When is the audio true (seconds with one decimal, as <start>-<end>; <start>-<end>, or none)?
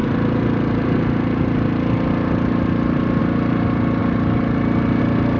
0.0-5.4